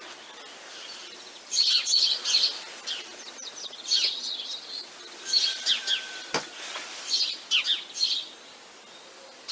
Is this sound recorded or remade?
recorded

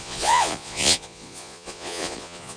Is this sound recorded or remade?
remade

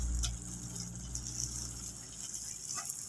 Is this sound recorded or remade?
recorded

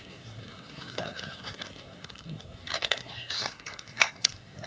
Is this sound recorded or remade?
remade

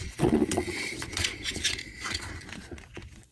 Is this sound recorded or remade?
remade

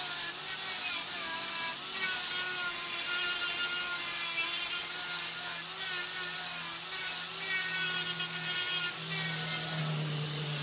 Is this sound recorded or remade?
recorded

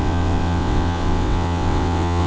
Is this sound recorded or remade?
remade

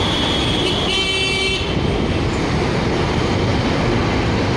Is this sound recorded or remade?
recorded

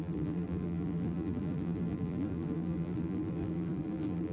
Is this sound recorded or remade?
remade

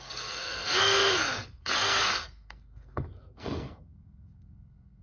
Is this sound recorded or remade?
remade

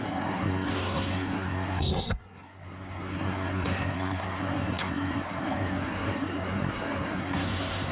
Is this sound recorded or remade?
remade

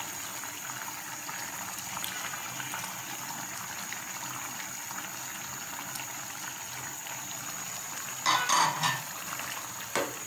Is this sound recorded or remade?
recorded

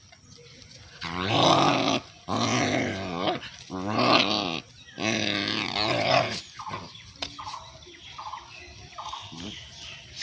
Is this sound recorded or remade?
recorded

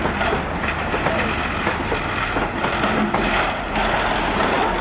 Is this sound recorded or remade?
recorded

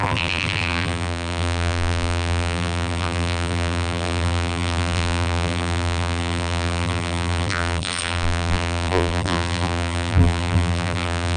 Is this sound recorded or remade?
remade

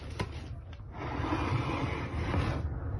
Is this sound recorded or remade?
recorded